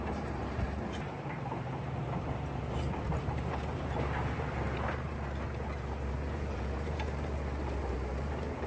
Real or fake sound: fake